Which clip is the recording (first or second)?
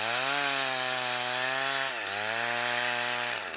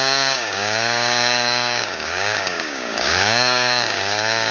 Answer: first